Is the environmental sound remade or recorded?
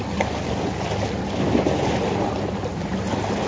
recorded